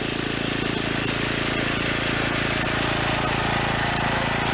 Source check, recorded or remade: recorded